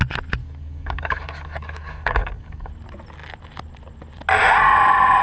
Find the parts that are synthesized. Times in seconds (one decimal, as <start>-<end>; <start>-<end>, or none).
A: 0.4-2.7